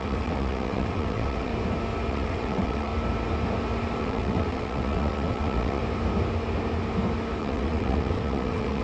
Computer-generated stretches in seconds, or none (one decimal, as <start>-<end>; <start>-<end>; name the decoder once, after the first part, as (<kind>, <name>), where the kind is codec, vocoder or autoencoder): 0.0-1.5 (vocoder, WaveNeXt); 2.1-2.9; 4.0-5.8; 7.4-8.8